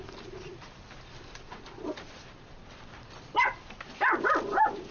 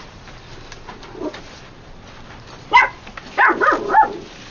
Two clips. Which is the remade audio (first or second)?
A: first